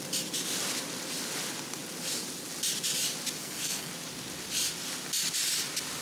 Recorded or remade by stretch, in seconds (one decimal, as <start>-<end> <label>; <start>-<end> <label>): 0.0-3.4 recorded; 3.4-3.9 remade; 3.9-6.0 recorded